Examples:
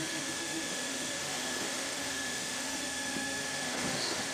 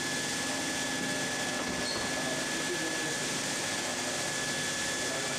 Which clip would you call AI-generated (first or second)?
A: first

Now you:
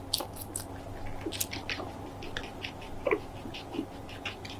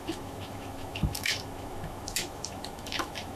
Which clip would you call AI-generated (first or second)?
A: second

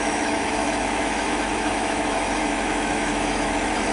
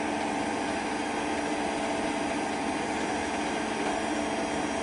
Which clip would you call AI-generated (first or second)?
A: first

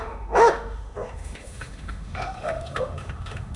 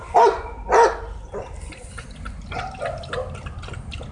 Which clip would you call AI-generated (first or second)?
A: first